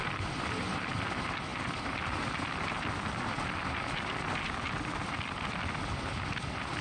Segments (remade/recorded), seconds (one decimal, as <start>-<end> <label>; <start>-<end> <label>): 0.0-6.8 recorded